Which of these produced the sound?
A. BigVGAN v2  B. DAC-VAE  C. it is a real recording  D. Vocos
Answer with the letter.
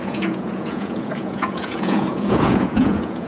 D